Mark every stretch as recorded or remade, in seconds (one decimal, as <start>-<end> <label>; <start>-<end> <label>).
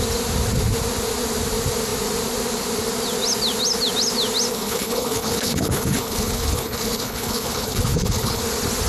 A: 0.0-4.5 recorded; 4.5-8.4 remade; 8.4-8.9 recorded